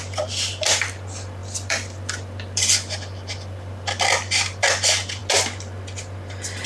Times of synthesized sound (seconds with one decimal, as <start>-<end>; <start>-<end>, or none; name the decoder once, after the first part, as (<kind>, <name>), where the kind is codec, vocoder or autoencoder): 0.0-5.2 (vocoder, BigVGAN v2)